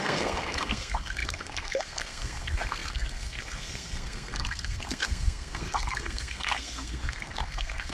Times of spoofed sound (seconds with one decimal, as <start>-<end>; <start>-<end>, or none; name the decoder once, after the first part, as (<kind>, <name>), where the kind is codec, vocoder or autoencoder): 0.0-7.9 (codec, SNAC)